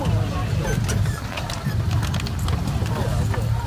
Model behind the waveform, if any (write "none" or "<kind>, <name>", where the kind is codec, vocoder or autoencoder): none